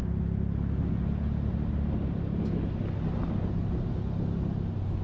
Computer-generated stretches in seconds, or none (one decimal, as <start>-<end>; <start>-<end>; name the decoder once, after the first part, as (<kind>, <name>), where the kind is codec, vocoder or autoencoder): none